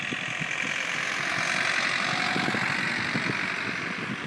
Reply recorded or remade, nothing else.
recorded